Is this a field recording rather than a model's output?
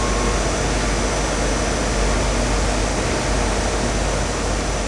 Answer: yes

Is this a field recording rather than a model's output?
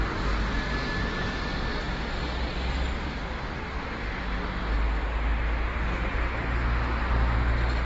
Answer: yes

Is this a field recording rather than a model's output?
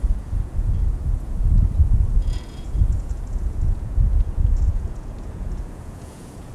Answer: no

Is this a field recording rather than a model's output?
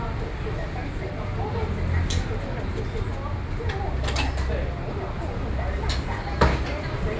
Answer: yes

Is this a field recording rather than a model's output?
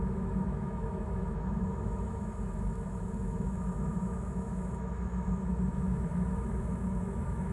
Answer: no